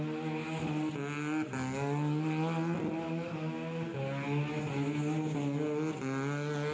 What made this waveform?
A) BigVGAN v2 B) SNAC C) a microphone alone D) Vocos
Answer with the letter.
C